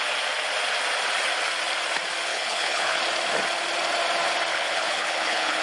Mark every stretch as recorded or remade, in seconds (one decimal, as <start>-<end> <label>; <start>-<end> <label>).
0.0-2.3 recorded; 2.3-3.0 remade; 3.0-4.5 recorded; 4.5-5.6 remade